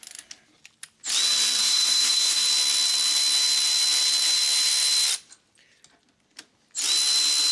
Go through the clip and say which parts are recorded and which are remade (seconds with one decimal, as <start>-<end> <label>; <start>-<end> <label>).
0.0-1.6 recorded; 1.6-2.4 remade; 2.4-7.5 recorded